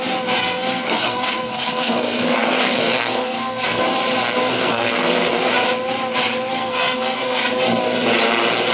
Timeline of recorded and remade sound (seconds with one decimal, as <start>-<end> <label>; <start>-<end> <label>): 0.0-0.4 recorded; 0.4-3.8 remade; 3.8-4.5 recorded; 4.5-5.5 remade; 5.5-6.5 recorded; 6.5-7.5 remade; 7.5-8.7 recorded